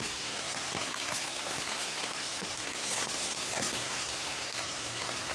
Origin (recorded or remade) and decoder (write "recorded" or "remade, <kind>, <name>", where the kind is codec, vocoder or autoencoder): remade, codec, SNAC